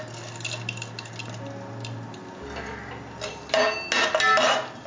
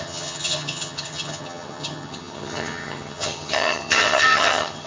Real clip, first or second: first